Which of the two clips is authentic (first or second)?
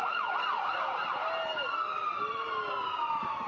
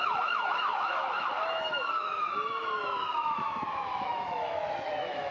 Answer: first